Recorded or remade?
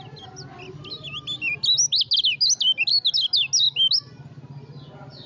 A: recorded